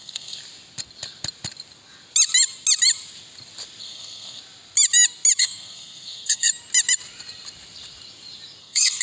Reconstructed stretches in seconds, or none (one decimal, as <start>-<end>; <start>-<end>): 0.0-0.4; 3.8-4.4; 5.4-6.5; 8.6-9.0